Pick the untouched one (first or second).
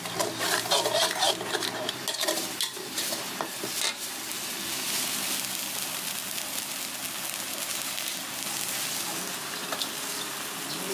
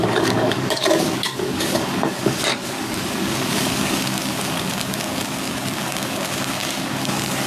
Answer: first